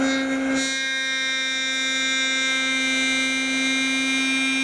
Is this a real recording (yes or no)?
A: yes